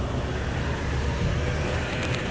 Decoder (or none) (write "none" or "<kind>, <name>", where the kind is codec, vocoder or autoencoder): none